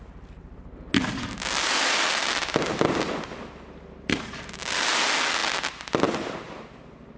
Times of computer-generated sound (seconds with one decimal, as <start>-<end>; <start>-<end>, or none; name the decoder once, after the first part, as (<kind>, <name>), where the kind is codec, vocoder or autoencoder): none